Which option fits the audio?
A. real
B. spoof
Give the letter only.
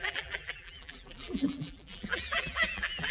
B